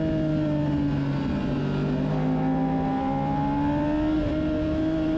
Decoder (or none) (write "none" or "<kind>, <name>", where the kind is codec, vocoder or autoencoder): none